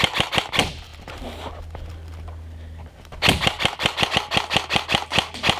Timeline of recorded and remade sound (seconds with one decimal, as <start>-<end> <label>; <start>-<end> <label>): 0.0-5.6 recorded